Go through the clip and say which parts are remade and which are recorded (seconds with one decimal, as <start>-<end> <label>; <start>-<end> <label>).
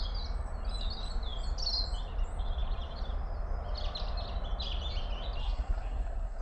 0.0-5.4 recorded; 5.4-6.4 remade